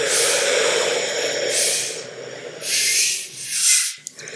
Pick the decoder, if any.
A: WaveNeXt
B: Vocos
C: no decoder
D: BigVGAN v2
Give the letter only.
C